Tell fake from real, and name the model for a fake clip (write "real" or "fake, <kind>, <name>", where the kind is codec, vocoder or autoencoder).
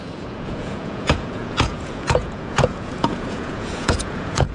fake, vocoder, Vocos